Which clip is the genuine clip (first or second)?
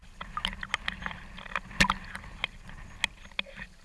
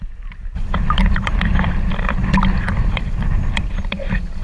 first